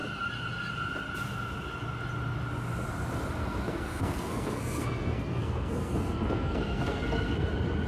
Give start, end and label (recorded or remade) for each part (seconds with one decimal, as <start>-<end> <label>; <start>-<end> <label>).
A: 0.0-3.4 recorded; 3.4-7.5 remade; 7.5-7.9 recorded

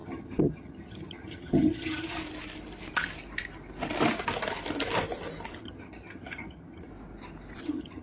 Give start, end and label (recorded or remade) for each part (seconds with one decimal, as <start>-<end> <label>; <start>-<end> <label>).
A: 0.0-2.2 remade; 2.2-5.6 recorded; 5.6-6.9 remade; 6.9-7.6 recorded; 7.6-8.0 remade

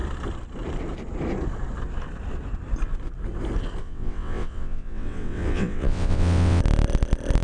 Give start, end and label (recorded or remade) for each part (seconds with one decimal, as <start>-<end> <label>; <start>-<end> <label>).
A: 0.0-3.8 recorded; 3.8-6.6 remade; 6.6-7.4 recorded